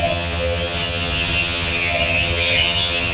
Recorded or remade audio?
remade